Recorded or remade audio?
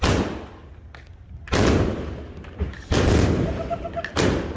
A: recorded